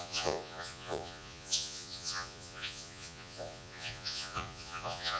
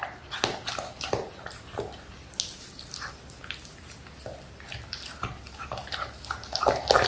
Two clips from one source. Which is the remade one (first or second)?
first